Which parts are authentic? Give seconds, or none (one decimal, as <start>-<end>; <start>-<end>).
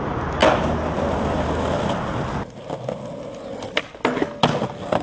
0.0-5.0